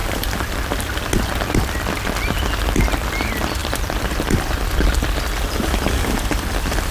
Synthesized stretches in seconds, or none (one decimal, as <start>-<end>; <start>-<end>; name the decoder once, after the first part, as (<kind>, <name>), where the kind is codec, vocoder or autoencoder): 0.0-0.8 (vocoder, BigVGAN v2); 3.6-6.9

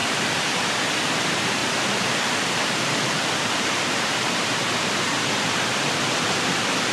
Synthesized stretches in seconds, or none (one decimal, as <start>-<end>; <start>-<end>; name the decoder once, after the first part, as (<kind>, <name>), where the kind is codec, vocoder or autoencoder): 0.0-0.8 (vocoder, BigVGAN v2); 1.6-5.7

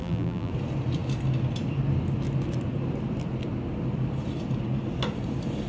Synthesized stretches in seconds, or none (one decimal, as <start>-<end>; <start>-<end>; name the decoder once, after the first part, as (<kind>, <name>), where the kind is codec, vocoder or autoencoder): 0.0-0.5 (vocoder, BigVGAN v2)